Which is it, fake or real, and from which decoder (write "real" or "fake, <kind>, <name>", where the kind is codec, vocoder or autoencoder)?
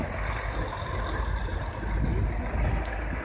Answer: real